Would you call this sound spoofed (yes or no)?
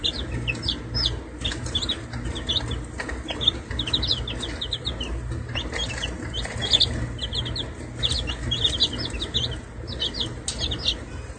no